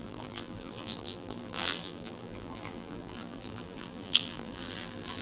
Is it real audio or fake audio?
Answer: fake